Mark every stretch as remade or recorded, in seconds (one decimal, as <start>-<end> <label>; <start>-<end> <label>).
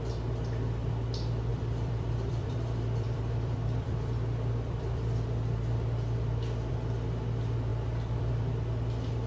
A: 0.0-1.5 recorded; 1.5-6.7 remade; 6.7-7.7 recorded; 7.7-8.3 remade; 8.3-9.3 recorded